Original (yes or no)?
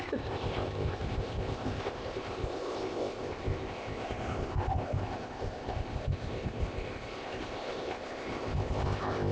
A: no